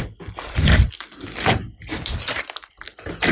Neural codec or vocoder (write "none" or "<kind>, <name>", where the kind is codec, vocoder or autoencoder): none